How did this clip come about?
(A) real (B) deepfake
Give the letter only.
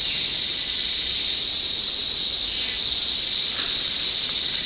A